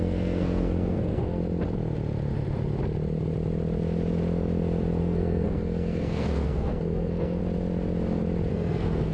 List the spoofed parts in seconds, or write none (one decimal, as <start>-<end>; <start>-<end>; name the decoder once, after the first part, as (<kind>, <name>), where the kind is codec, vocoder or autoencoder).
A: 0.0-1.4 (codec, SNAC); 5.0-7.4; 8.5-9.1